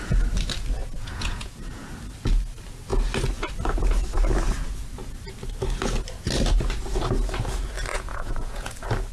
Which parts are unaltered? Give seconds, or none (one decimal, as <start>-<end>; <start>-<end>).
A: 0.0-0.8; 1.9-7.9; 8.7-9.1